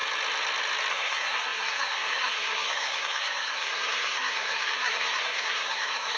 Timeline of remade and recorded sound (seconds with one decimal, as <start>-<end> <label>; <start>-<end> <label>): 0.0-0.9 recorded; 0.9-6.2 remade